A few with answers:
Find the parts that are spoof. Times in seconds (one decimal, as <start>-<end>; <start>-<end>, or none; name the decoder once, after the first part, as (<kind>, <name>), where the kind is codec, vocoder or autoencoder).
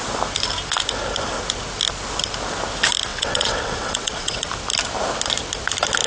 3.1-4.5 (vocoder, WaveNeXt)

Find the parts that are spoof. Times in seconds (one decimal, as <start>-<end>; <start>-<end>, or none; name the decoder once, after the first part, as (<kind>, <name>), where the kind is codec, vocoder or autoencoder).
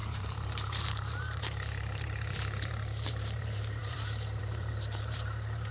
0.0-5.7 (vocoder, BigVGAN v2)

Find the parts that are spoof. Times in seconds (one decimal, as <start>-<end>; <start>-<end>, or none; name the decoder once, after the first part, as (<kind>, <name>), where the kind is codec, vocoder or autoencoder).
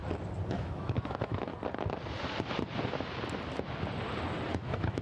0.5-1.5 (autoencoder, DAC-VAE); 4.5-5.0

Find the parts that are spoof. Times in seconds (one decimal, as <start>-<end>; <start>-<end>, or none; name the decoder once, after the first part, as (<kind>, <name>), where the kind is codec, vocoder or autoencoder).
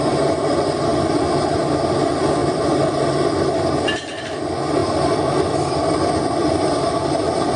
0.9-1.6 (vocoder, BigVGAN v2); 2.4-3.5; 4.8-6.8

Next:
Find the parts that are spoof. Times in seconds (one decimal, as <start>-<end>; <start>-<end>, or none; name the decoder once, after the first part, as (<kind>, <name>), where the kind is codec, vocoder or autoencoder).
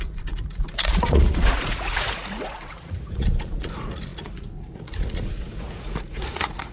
0.0-6.7 (vocoder, Vocos)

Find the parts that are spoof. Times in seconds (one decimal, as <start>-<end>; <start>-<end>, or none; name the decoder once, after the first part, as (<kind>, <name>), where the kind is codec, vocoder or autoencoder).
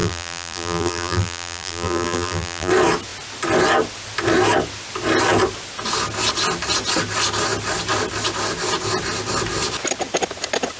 0.0-2.7 (vocoder, BigVGAN v2)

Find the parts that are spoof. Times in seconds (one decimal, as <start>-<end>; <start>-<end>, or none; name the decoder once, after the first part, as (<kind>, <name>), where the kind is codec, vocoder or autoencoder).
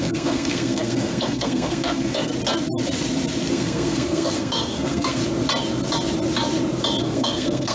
0.0-2.3 (codec, SNAC); 3.5-5.2; 7.0-7.7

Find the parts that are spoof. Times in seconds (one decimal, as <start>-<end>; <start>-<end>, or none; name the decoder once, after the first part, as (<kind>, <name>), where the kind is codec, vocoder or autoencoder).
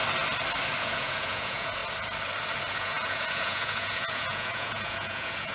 0.8-1.8 (vocoder, Vocos); 2.7-5.5